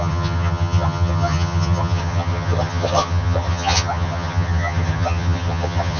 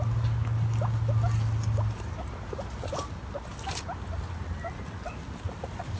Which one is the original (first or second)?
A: second